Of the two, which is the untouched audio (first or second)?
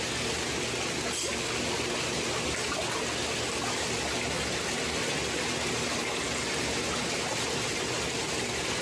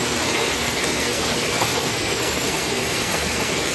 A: first